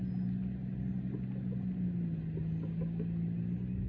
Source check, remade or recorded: recorded